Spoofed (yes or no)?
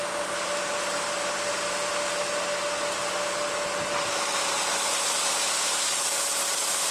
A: no